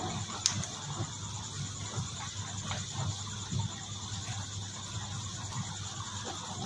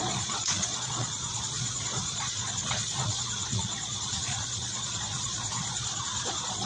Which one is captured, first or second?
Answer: first